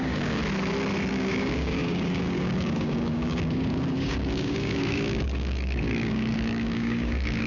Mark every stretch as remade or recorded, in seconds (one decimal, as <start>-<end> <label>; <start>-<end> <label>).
0.0-0.4 remade; 0.4-1.1 recorded; 1.1-7.5 remade